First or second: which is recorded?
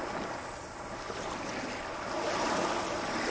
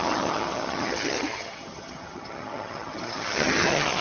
first